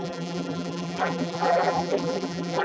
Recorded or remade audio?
remade